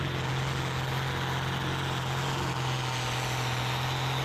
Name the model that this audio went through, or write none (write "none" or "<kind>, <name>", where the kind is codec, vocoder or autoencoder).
none